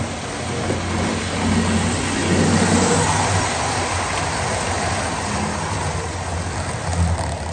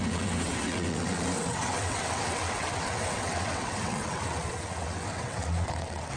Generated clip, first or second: second